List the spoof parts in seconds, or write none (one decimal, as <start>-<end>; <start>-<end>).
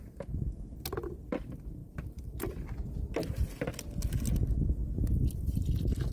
4.8-6.1